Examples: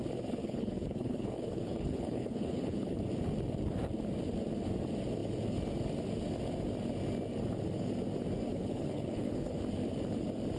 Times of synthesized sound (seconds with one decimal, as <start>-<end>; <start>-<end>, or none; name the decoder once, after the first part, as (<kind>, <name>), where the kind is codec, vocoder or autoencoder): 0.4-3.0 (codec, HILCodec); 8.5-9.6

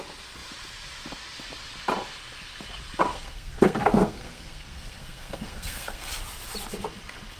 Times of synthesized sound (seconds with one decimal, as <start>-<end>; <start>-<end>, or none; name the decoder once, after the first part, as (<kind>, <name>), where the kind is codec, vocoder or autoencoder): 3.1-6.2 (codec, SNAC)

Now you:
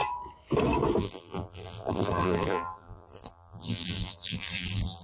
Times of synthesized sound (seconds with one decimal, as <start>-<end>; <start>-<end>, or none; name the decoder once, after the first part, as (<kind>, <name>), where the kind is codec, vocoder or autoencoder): 1.0-5.0 (vocoder, BigVGAN v2)